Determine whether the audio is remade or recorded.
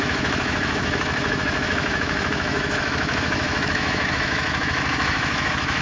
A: remade